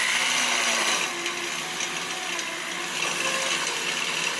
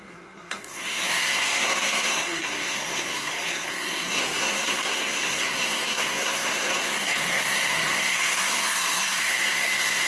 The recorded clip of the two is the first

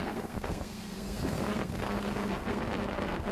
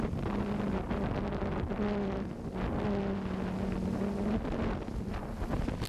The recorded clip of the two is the second